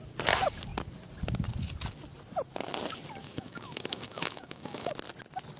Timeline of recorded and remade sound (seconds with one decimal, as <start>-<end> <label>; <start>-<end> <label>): 0.0-3.2 recorded; 3.2-4.9 remade; 4.9-5.6 recorded